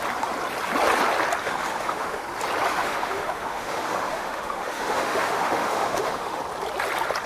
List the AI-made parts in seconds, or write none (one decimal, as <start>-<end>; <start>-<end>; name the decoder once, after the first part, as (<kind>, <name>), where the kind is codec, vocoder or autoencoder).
1.4-2.2 (autoencoder, DAC-VAE); 2.7-6.4